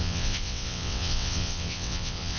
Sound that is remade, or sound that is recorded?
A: remade